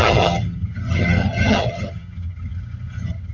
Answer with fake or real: fake